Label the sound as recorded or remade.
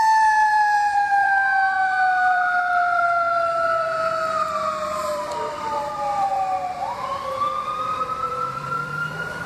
remade